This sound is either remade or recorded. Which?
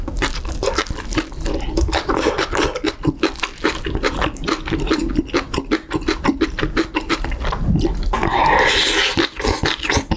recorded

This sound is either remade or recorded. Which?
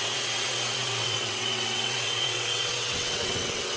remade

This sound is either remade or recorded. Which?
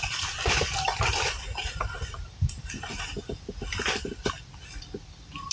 recorded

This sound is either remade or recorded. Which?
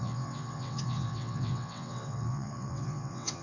remade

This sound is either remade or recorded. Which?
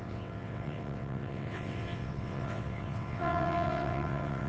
remade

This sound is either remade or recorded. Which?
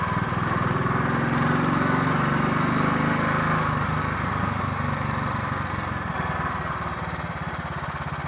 recorded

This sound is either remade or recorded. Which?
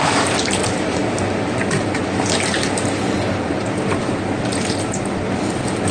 recorded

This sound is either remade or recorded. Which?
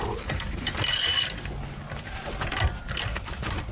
recorded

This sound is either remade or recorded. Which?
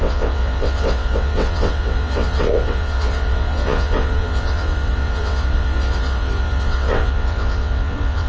remade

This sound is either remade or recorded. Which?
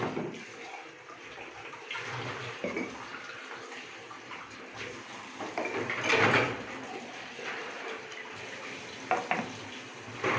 recorded